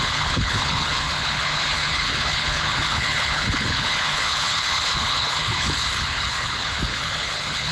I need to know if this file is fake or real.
fake